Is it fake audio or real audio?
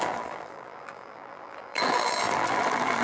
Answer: fake